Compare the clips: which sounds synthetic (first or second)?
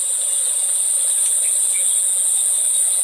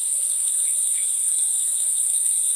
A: second